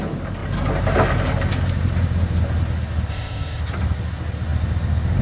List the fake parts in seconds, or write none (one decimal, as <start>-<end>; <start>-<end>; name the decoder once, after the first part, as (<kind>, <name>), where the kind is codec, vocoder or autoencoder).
3.1-3.6 (codec, ZipCodec)